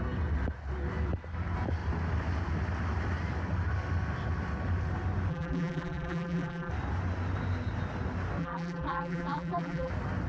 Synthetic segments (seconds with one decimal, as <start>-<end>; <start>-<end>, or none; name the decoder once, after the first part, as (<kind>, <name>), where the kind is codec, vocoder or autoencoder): 5.3-6.7 (vocoder, BigVGAN v2); 8.4-9.9